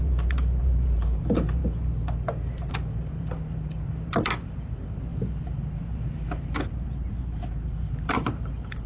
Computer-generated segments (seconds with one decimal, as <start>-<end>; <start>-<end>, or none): 0.0-8.9